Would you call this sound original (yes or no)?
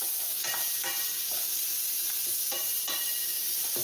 no